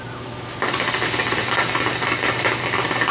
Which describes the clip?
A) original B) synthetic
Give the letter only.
A